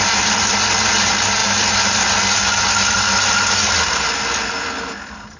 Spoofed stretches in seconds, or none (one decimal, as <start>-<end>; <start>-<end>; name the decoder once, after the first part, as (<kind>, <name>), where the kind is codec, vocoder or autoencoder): none